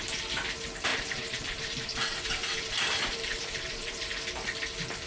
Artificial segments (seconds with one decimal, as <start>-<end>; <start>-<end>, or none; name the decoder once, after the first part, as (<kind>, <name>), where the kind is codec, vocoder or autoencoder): 0.9-4.0 (vocoder, BigVGAN v2)